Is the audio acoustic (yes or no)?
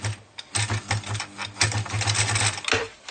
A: yes